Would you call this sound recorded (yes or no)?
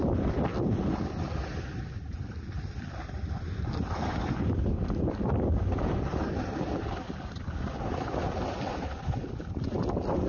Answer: yes